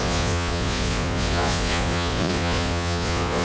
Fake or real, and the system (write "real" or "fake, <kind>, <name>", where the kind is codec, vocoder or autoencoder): fake, vocoder, Vocos